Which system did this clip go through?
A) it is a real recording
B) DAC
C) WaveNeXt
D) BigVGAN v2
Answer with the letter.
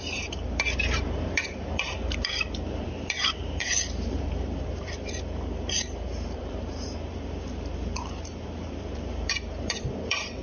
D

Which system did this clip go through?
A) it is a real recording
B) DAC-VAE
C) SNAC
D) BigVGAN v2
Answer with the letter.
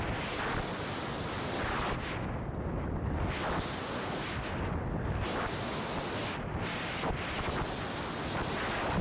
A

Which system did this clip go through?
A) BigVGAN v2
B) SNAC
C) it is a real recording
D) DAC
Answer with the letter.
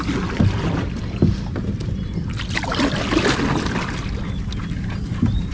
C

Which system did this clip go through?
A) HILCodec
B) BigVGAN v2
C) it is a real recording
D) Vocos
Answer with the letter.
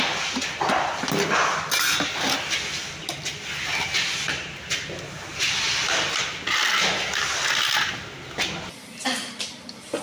C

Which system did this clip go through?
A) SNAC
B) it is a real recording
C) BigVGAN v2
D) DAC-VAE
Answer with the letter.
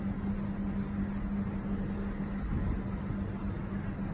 B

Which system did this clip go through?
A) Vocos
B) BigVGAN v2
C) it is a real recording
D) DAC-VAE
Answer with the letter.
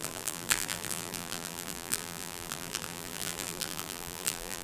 B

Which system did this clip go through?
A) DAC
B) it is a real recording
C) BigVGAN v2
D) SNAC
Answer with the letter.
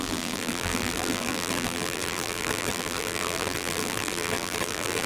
C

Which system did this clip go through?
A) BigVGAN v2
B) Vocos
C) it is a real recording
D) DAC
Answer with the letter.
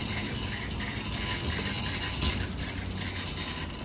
C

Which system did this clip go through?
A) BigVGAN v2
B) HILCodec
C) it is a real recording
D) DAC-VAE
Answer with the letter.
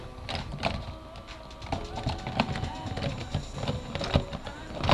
C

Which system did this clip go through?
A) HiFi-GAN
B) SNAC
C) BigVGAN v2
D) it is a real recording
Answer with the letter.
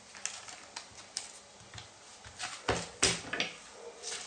D